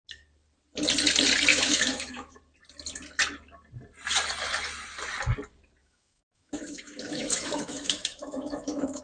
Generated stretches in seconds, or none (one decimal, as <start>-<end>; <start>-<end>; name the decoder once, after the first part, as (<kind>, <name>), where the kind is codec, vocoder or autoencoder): 1.5-2.4 (autoencoder, DAC-VAE); 5.8-9.0